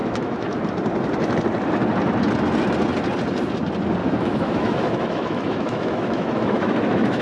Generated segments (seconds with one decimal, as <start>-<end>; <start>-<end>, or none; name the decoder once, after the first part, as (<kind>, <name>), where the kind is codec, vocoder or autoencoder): 0.0-0.6 (autoencoder, DAC-VAE); 4.0-7.2